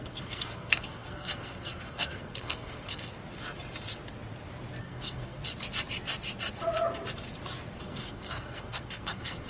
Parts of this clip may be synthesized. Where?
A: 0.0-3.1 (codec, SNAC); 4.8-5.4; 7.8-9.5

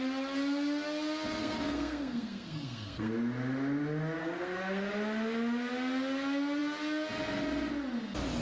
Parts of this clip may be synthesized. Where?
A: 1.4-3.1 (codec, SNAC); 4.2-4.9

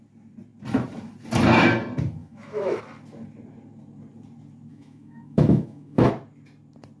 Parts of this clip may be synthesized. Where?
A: 2.2-2.8 (autoencoder, DAC-VAE); 4.7-6.1

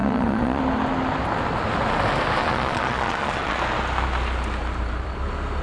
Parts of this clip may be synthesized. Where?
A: 0.0-0.6 (vocoder, Vocos); 2.4-3.6

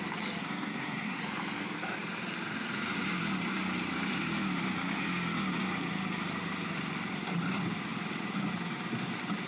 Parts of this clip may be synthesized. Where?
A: 0.4-1.2 (codec, SNAC)

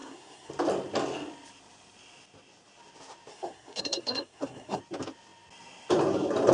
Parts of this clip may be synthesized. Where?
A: 0.0-0.5 (codec, SNAC); 3.3-4.8